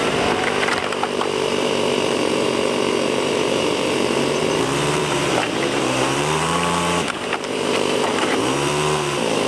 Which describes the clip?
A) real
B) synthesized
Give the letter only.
B